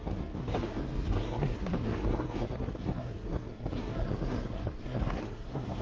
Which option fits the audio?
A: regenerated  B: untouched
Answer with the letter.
A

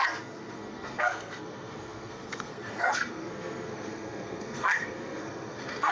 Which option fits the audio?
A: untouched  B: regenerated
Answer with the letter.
B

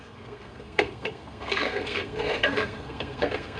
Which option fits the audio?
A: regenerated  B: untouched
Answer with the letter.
A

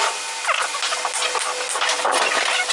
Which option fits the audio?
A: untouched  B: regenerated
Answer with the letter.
A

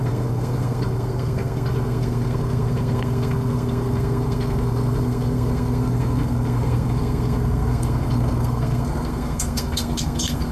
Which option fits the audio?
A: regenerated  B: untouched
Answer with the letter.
A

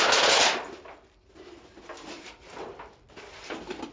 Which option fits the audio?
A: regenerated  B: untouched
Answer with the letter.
B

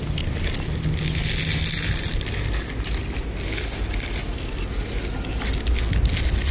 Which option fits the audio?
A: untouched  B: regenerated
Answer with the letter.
A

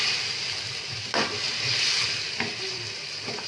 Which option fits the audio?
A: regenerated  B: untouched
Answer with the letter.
B